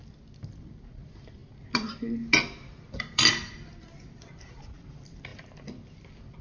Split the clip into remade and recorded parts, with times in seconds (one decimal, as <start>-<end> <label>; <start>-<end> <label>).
0.0-6.4 recorded

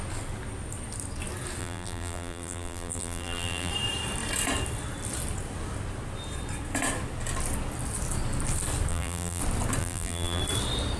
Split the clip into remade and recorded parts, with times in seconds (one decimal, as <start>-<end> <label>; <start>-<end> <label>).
0.0-1.6 recorded; 1.6-3.7 remade; 3.7-8.9 recorded; 8.9-9.4 remade; 9.4-9.8 recorded; 9.8-10.4 remade; 10.4-11.0 recorded

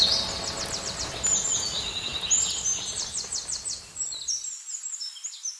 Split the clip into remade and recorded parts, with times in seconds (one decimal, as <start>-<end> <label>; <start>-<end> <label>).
0.0-5.6 recorded

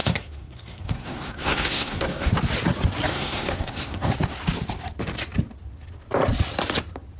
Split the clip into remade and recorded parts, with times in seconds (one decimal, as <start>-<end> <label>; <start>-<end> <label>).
0.0-2.3 remade; 2.3-3.1 recorded; 3.1-4.1 remade; 4.1-7.2 recorded

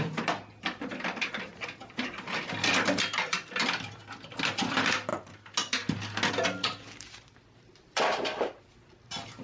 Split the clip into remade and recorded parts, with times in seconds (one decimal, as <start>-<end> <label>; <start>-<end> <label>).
0.0-1.5 remade; 1.5-4.6 recorded; 4.6-5.1 remade; 5.1-6.3 recorded; 6.3-9.4 remade